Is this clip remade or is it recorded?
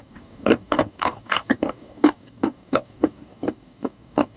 remade